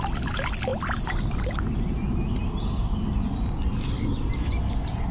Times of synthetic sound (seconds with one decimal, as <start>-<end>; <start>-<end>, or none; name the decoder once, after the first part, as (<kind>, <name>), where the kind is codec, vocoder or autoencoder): none